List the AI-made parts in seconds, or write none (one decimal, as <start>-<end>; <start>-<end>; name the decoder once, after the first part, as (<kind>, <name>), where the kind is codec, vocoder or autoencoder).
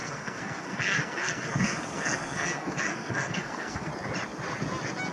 0.0-3.9 (codec, SNAC)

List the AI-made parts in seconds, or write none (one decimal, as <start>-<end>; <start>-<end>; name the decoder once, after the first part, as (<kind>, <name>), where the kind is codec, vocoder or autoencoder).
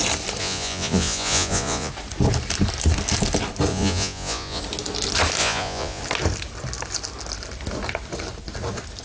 0.4-1.9 (vocoder, Vocos); 3.7-4.6; 5.4-6.0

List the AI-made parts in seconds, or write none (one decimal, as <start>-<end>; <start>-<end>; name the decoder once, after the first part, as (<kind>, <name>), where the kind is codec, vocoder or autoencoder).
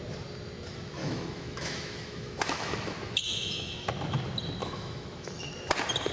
1.0-3.9 (autoencoder, DAC-VAE); 4.6-5.5